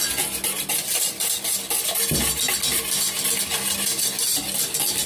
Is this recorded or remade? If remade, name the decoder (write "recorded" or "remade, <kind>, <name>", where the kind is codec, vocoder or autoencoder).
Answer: recorded